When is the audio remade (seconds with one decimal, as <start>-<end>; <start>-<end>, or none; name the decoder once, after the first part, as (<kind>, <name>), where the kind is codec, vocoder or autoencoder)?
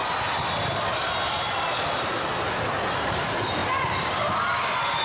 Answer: none